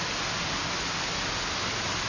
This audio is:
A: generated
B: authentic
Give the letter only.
B